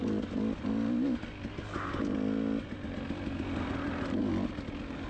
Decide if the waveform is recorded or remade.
recorded